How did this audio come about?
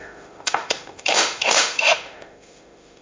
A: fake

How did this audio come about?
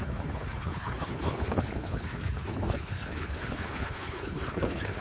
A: fake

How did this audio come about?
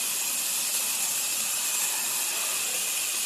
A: real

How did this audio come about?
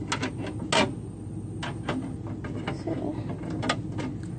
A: real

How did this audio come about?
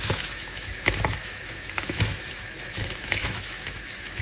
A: fake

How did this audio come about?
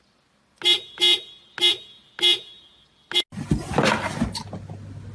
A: real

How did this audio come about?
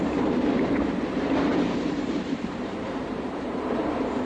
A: fake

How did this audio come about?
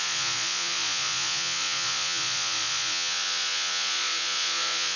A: fake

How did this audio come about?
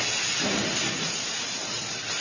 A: real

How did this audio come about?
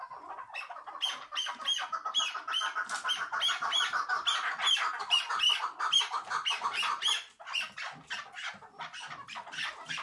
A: real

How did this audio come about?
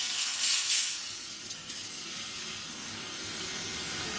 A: fake